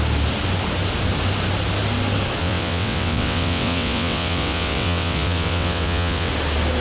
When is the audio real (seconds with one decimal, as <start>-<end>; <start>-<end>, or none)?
0.0-2.4; 6.3-6.8